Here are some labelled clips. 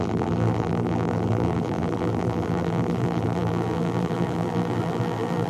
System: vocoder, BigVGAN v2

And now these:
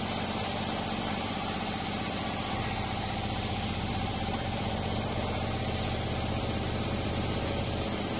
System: vocoder, BigVGAN v2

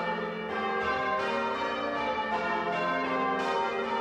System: none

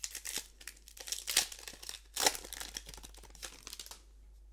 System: none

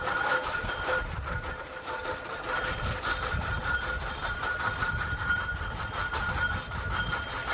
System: none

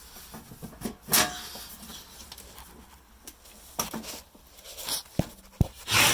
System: none